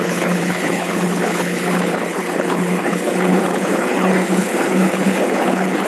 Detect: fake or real fake